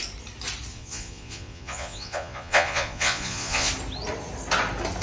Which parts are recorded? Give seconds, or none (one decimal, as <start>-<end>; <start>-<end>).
0.0-0.7; 3.7-5.0